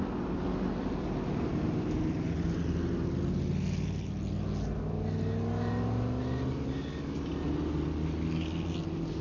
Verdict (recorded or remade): recorded